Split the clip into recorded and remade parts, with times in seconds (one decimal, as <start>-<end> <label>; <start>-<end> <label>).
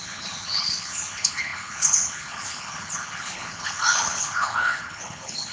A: 0.0-5.5 remade